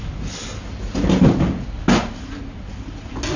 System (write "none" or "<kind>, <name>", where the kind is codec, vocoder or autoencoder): none